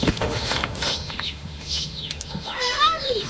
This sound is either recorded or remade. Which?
remade